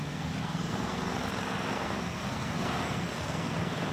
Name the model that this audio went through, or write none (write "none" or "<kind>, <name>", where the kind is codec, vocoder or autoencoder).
codec, SNAC